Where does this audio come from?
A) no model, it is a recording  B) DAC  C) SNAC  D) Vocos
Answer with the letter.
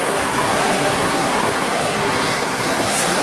C